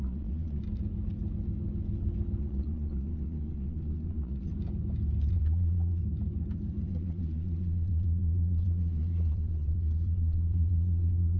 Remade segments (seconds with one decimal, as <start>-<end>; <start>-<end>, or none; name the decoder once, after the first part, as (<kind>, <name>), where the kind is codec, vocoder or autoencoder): 0.0-0.6 (vocoder, Vocos); 2.4-4.5; 5.3-6.0; 6.9-11.4